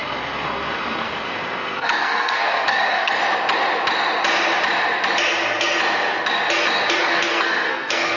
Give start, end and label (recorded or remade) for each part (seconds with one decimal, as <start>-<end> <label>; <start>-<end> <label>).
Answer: 0.0-3.2 remade; 3.2-7.0 recorded; 7.0-8.2 remade